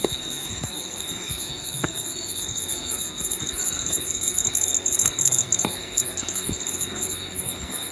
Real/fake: fake